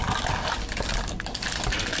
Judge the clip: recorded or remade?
recorded